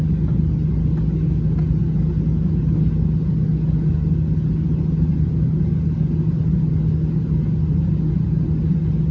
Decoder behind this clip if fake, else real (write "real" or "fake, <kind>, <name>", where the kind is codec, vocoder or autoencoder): real